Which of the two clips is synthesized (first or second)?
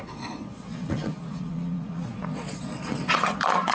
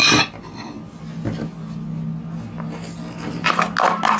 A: first